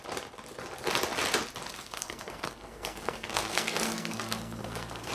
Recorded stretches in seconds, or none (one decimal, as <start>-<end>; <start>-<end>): 0.0-1.7